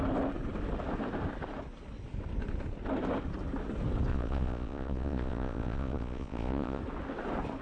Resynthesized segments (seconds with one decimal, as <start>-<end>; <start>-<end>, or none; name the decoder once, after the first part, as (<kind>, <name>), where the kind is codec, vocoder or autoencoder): 4.1-6.8 (vocoder, Vocos)